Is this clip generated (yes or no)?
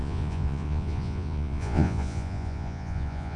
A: yes